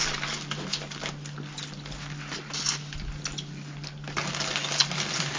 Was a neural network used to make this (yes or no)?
no